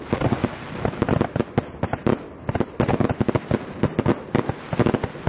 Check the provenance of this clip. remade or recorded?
recorded